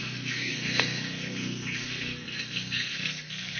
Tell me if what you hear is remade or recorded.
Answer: remade